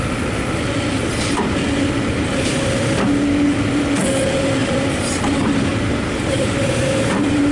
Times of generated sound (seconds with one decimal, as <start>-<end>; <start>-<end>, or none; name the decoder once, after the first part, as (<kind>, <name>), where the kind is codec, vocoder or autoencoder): 4.6-5.2 (vocoder, BigVGAN v2); 5.7-7.5